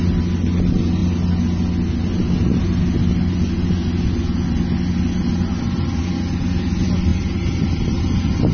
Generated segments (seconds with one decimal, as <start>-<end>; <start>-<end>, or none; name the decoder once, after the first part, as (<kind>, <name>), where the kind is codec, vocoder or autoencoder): 7.1-8.0 (vocoder, BigVGAN v2)